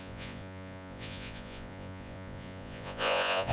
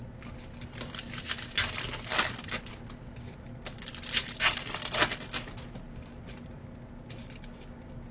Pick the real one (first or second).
second